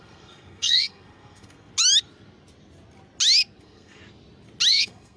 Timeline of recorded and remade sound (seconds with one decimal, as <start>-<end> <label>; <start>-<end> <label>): 0.0-1.7 remade; 1.7-3.6 recorded; 3.6-4.0 remade; 4.0-4.7 recorded; 4.7-5.2 remade